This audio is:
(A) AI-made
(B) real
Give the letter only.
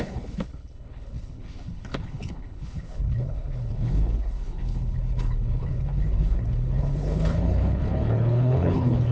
A